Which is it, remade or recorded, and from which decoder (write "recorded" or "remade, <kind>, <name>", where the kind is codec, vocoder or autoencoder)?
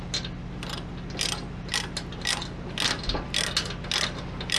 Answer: recorded